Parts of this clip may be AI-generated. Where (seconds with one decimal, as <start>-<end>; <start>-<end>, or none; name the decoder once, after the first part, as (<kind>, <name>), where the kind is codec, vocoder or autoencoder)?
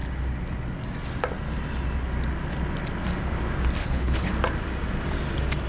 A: 3.8-4.3 (codec, HILCodec)